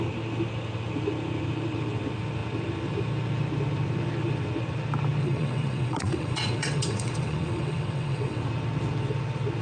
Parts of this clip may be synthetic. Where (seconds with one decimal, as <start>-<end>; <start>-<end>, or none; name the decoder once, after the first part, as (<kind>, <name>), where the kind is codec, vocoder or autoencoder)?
5.2-8.4 (vocoder, WaveNeXt)